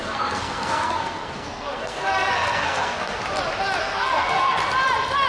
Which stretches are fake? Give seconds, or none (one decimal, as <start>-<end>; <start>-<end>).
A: 0.0-3.2; 3.8-4.6